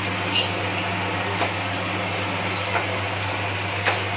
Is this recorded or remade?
recorded